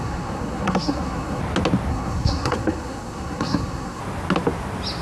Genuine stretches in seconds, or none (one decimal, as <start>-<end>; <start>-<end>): 1.4-1.9; 4.0-5.0